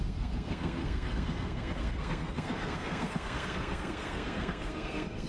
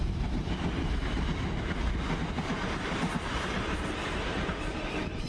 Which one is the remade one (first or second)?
first